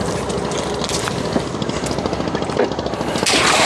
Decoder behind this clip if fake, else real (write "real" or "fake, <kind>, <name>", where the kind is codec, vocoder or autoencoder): real